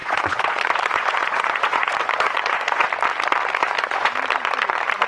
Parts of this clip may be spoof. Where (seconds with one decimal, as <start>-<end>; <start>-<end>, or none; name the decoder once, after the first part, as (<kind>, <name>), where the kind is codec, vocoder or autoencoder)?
0.0-2.9 (vocoder, Vocos); 3.6-4.1